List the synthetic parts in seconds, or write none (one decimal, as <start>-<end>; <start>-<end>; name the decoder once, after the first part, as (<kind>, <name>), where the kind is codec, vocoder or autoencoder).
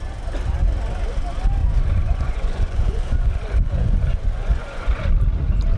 1.6-5.1 (vocoder, Vocos)